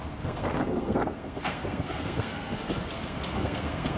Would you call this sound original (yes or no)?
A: no